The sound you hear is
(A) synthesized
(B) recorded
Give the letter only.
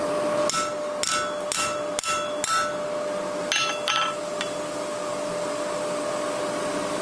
B